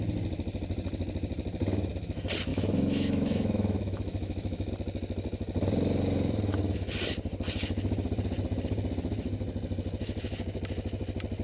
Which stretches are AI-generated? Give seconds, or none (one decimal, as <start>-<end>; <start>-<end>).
2.5-4.7